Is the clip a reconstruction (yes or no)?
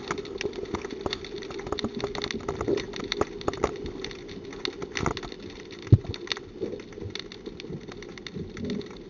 no